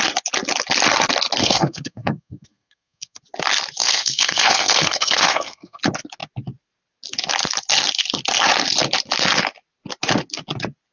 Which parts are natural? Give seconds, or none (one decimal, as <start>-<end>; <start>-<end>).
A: 0.0-1.4; 3.2-3.8; 5.8-10.9